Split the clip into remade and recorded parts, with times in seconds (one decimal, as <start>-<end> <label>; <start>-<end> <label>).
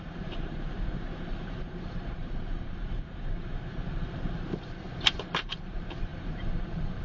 0.0-7.0 remade